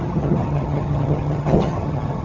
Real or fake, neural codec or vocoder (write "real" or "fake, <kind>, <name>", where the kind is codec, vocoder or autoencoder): fake, vocoder, HiFi-GAN